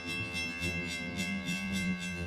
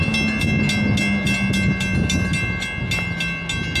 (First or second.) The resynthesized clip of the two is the first